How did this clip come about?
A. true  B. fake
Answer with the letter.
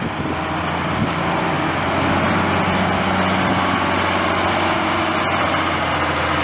A